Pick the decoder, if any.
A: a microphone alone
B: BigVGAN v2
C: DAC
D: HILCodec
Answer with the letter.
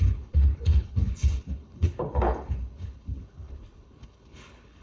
D